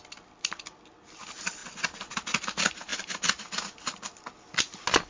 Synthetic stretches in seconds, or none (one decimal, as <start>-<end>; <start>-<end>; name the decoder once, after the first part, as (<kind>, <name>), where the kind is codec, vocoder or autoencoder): none